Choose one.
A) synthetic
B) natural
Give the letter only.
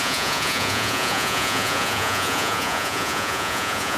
A